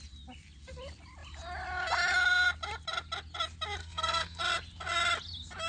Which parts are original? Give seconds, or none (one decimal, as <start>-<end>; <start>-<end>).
0.0-3.8; 4.4-5.7